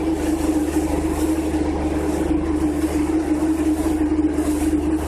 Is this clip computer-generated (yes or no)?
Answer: no